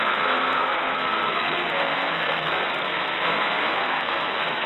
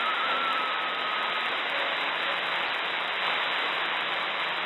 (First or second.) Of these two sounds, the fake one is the first